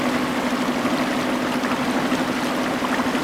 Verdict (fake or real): real